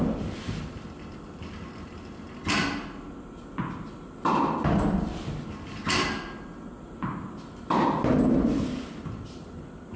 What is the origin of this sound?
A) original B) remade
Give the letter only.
A